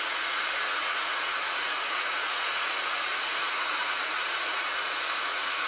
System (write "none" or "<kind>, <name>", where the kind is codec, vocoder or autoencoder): vocoder, Vocos